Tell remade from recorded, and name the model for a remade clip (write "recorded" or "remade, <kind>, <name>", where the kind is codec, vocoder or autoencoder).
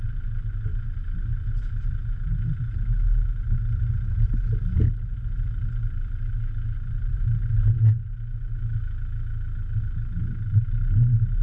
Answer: recorded